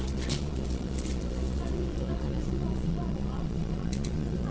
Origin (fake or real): fake